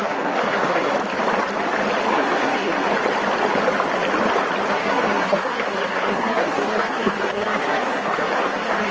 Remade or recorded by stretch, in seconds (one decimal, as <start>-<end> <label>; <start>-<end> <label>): 0.0-1.0 remade; 1.0-2.1 recorded; 2.1-2.9 remade; 2.9-4.7 recorded; 4.7-8.9 remade